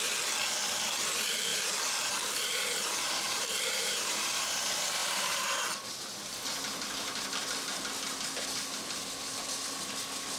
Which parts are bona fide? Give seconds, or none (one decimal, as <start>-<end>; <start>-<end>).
0.0-1.5; 4.6-5.0; 5.6-10.4